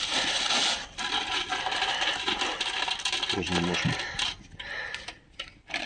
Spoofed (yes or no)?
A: no